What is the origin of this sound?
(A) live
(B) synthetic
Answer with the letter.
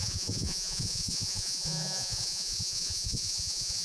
B